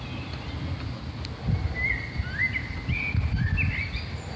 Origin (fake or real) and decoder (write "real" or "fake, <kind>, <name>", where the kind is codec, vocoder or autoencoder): real